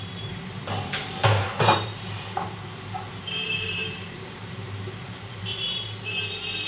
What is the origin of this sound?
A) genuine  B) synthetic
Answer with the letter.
B